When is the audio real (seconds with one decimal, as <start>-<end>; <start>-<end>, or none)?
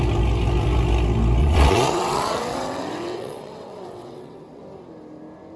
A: 0.0-1.4; 4.6-5.6